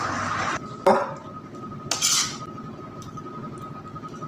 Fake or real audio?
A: real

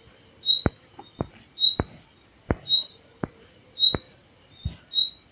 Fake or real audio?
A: real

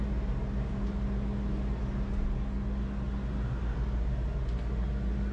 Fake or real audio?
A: real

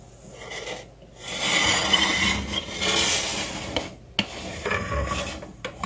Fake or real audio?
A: real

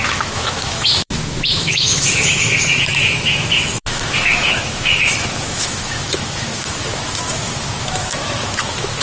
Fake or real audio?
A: fake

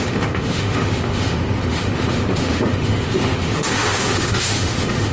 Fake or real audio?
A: fake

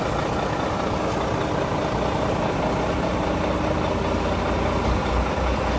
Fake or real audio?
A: real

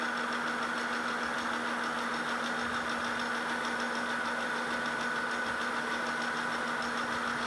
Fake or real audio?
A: real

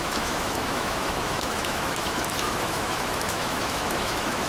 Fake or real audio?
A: fake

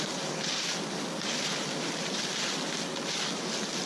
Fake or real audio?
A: real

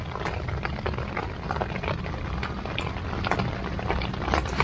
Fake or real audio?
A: real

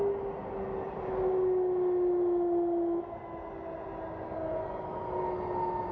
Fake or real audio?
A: real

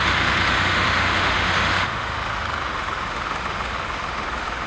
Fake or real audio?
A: fake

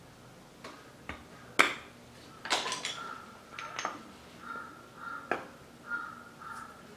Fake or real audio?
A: real